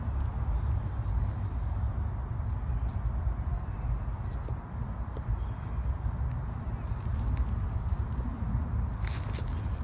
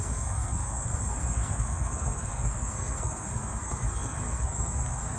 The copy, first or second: second